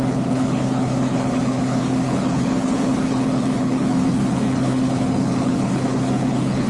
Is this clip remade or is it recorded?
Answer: remade